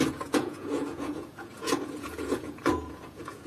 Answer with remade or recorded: remade